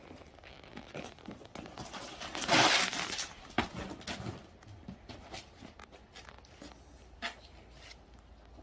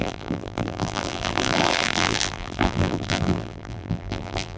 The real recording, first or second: first